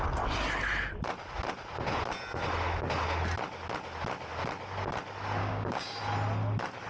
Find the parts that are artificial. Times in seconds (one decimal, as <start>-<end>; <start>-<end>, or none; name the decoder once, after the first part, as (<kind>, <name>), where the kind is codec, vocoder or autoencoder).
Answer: 5.4-6.0 (codec, DAC)